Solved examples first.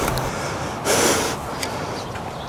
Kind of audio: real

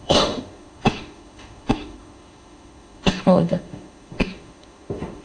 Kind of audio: fake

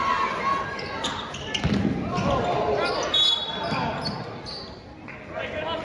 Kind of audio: real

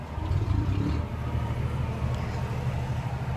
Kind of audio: real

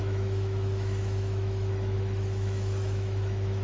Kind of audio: fake